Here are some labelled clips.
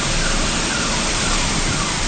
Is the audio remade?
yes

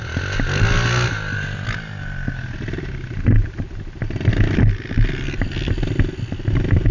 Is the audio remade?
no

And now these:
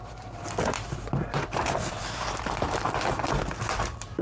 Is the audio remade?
yes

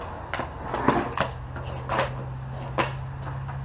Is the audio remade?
no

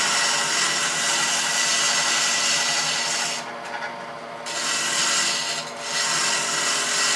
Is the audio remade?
no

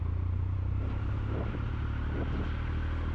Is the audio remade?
no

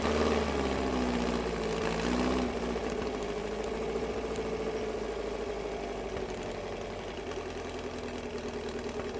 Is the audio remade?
no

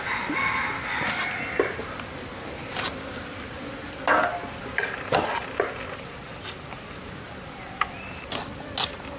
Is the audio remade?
no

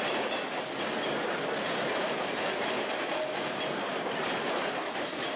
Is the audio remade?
no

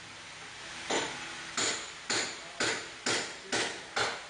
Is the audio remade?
no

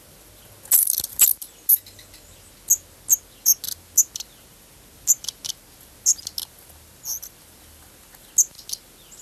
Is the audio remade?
no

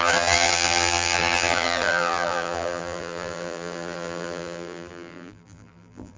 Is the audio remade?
yes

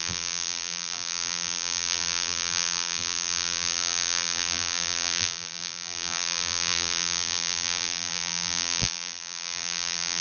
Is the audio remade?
yes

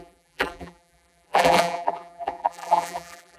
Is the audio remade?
yes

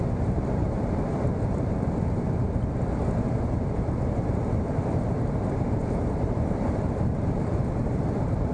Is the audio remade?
yes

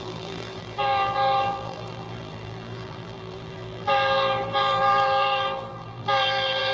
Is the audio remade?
yes